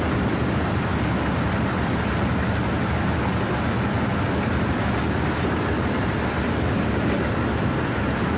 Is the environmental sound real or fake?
real